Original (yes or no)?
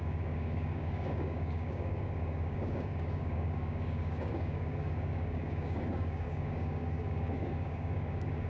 no